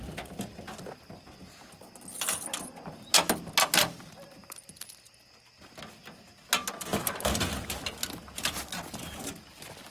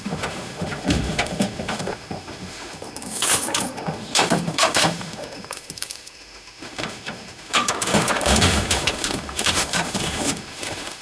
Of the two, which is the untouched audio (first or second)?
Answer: first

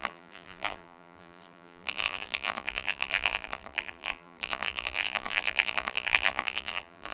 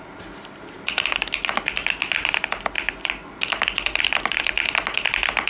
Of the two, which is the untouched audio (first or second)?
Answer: second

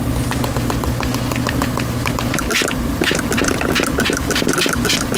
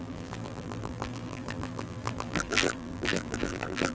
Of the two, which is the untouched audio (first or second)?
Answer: first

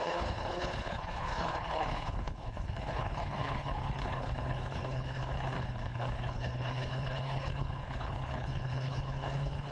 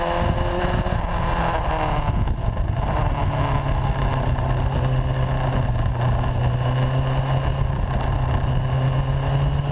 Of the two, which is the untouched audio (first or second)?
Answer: second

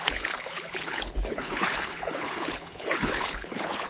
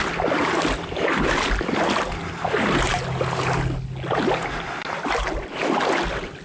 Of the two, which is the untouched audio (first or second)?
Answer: second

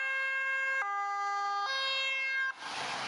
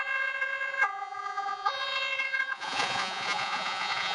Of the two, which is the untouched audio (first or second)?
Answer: first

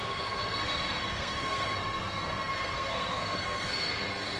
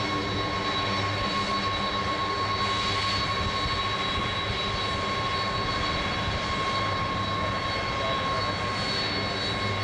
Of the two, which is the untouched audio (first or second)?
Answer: second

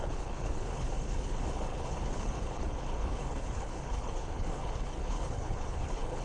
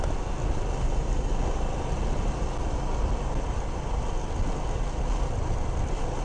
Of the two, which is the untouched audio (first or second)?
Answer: second